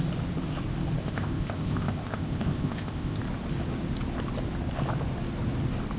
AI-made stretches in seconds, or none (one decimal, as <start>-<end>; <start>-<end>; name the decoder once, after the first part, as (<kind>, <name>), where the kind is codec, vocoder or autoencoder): 1.0-3.2 (codec, ZipCodec)